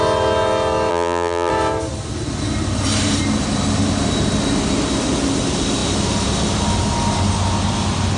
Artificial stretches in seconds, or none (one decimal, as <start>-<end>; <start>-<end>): 0.9-1.5